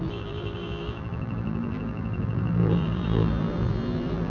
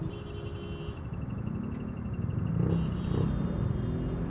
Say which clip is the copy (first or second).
first